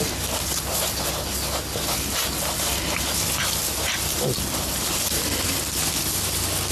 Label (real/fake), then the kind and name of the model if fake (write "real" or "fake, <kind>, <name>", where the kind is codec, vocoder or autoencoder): real